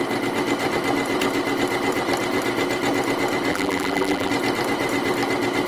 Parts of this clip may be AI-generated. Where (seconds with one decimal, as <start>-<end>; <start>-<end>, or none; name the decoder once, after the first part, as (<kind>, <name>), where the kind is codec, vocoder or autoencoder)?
3.5-4.3 (vocoder, BigVGAN v2)

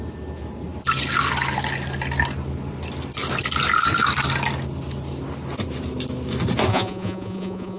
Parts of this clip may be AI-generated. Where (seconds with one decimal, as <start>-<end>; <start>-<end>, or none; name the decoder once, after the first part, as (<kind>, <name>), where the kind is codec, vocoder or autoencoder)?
6.7-7.8 (vocoder, Vocos)

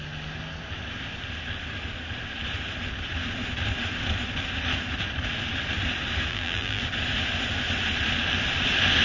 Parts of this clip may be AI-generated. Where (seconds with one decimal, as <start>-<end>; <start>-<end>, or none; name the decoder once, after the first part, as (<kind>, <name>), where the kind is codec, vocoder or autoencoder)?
6.3-6.8 (vocoder, BigVGAN v2)